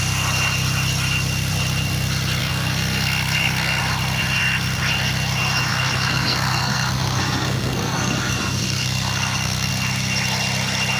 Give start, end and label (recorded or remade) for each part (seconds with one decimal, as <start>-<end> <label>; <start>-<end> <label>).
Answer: 0.0-2.4 recorded; 2.4-3.8 remade; 3.8-5.7 recorded; 5.7-9.7 remade; 9.7-11.0 recorded